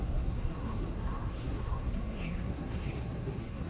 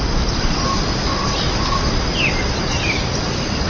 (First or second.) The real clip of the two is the second